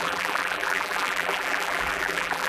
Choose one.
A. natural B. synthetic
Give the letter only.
B